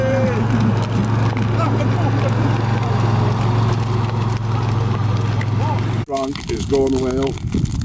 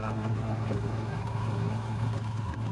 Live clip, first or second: first